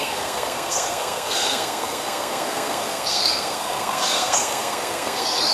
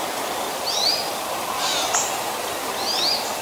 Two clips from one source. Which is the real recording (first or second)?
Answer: second